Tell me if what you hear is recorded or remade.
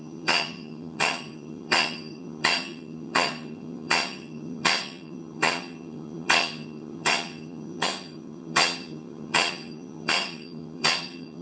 remade